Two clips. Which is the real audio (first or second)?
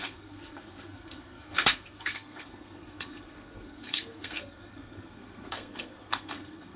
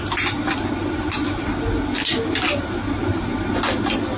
second